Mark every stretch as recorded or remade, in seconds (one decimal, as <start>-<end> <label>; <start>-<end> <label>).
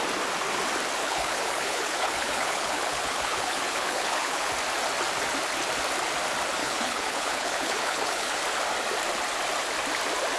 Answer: 0.0-1.0 recorded; 1.0-4.5 remade; 4.5-6.6 recorded; 6.6-8.4 remade; 8.4-10.4 recorded